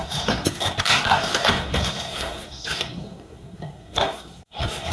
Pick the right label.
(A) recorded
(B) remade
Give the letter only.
B